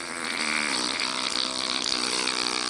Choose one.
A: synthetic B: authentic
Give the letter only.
B